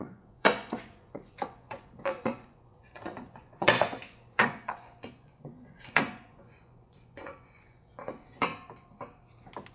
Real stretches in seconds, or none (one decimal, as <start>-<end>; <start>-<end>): 8.5-9.7